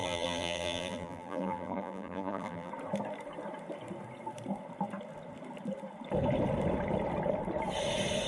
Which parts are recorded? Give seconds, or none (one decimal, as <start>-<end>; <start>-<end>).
2.7-8.3